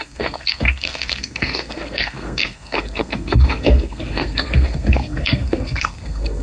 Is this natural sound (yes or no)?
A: no